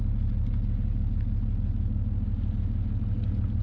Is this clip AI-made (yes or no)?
no